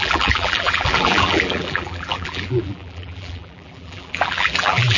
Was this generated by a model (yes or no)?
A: yes